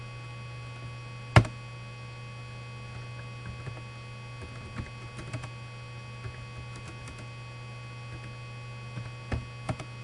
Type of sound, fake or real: real